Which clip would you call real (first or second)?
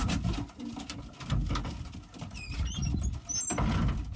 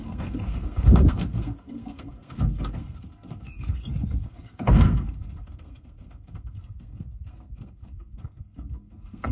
first